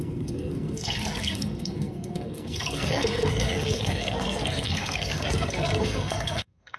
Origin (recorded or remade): remade